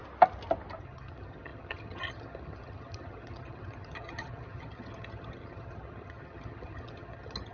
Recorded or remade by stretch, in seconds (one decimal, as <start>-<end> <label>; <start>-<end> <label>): 0.0-0.8 recorded; 0.8-7.5 remade